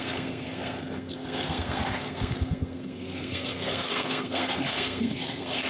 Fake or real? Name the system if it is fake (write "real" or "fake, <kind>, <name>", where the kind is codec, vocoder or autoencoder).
fake, codec, SNAC